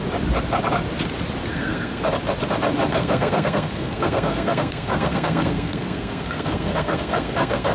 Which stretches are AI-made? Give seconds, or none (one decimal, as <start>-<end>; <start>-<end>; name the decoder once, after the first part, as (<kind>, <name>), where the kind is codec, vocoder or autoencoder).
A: 1.5-2.0 (codec, SNAC); 2.9-7.7